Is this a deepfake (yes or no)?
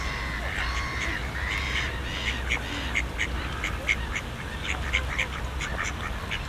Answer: no